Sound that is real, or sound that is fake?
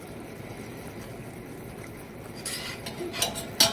real